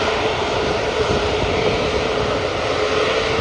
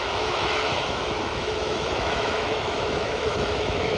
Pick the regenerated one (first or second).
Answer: second